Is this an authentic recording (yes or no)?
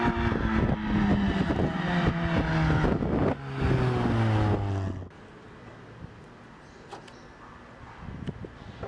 yes